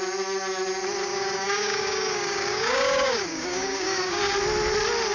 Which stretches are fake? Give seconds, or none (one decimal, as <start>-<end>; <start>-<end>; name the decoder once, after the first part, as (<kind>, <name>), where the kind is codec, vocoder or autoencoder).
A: 1.1-4.2 (codec, DAC)

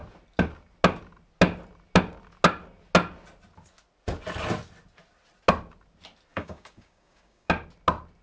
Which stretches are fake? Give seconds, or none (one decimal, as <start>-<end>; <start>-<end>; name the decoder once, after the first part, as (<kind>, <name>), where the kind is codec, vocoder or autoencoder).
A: 6.3-7.5 (codec, DAC)

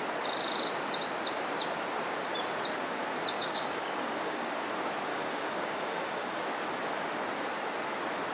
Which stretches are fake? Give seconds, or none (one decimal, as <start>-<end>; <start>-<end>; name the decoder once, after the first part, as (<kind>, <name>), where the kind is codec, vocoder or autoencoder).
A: 3.4-4.5 (codec, DAC); 5.1-6.4

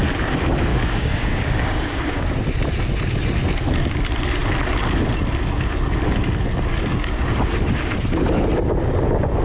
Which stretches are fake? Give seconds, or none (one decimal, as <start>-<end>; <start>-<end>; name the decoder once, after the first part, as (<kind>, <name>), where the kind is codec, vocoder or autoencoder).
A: 0.7-2.3 (codec, DAC); 6.9-7.6

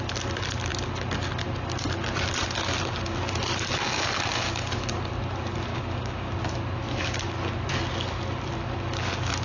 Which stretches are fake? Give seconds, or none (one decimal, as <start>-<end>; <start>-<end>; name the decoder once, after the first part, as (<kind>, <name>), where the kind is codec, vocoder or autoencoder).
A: 5.7-6.3 (codec, DAC)

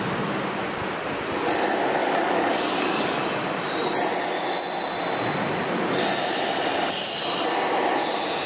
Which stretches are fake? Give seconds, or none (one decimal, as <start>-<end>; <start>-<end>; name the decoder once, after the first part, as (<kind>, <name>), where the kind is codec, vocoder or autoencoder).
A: 2.0-3.2 (codec, DAC)

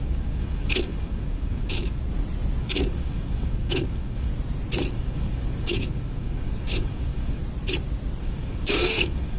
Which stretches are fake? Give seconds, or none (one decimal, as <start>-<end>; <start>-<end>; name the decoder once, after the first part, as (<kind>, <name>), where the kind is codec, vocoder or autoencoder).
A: 0.0-2.0 (codec, DAC); 2.6-4.3; 4.9-7.4; 8.2-9.4

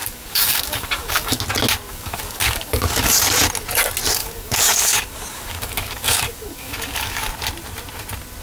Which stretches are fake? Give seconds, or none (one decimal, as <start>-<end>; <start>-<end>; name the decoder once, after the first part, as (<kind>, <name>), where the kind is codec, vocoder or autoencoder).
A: 0.0-1.4 (codec, DAC); 1.9-3.1; 4.2-7.3